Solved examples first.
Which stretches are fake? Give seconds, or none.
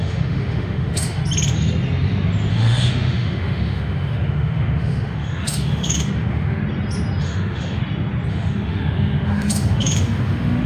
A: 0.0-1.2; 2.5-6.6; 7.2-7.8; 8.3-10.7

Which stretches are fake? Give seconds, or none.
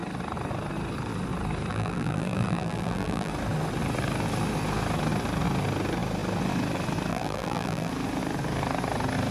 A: 1.7-3.3; 7.1-7.9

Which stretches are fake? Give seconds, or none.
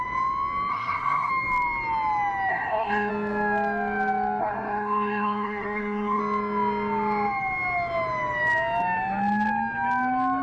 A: 0.7-1.3; 2.5-3.1; 4.4-6.2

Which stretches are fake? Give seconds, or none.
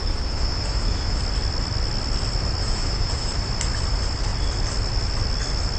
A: 0.0-1.2; 2.6-3.3